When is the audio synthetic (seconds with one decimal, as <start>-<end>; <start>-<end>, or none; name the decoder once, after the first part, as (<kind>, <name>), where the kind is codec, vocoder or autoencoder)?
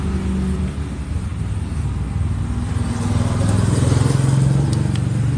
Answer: none